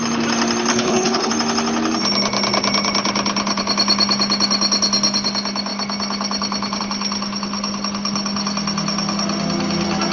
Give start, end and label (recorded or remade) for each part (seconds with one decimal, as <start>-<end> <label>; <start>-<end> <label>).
0.0-0.7 recorded; 0.7-1.3 remade; 1.3-10.1 recorded